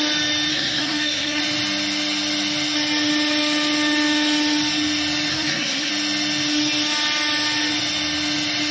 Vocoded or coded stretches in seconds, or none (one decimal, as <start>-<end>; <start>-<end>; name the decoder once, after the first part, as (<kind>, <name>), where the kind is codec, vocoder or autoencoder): 0.5-1.4 (codec, SNAC); 5.3-5.9